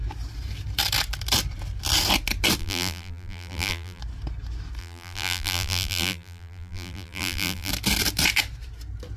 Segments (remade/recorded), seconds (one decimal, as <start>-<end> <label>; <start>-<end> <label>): 0.0-2.6 recorded; 2.6-4.0 remade; 4.0-4.8 recorded; 4.8-7.7 remade; 7.7-9.2 recorded